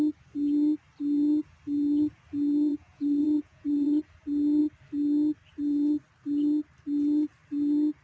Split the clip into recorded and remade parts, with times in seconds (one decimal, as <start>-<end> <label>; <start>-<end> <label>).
0.0-2.7 recorded; 2.7-4.0 remade; 4.0-8.0 recorded